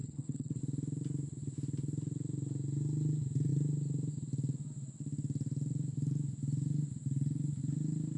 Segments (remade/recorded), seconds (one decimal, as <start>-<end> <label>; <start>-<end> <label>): 0.0-0.6 remade; 0.6-8.2 recorded